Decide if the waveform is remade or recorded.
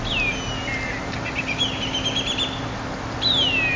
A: recorded